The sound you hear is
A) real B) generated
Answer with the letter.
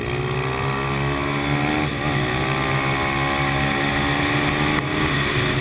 A